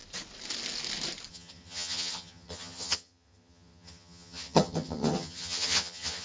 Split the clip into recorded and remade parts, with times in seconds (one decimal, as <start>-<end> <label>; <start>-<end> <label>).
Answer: 0.0-1.3 recorded; 1.3-6.2 remade